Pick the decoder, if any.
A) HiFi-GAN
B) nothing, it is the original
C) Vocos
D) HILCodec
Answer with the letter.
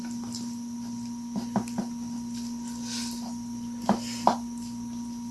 B